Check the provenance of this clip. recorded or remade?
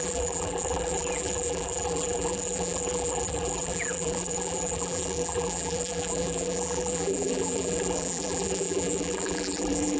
remade